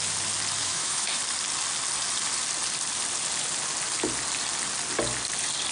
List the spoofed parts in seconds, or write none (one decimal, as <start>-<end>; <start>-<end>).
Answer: 0.6-1.2

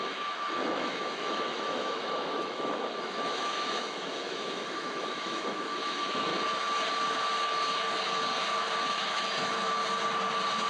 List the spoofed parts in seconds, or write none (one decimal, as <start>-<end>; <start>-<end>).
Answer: 0.0-6.3; 8.8-9.8

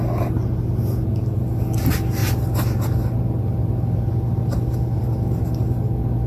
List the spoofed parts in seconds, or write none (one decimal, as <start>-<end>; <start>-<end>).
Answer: none

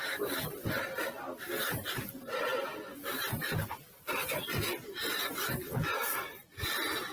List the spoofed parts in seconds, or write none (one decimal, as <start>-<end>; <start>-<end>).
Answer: none

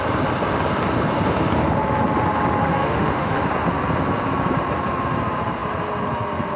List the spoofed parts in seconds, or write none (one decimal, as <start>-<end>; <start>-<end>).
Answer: 2.6-3.4

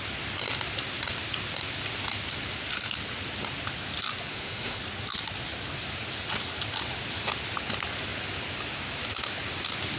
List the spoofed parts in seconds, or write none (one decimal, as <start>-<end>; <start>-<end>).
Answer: 4.3-4.8

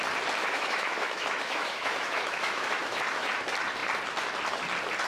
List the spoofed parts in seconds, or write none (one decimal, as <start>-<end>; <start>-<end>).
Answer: 0.4-3.3

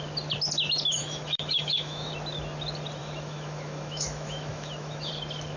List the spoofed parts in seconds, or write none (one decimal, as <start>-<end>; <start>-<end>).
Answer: 1.0-2.1; 3.0-5.1